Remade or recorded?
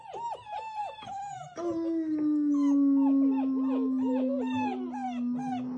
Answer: recorded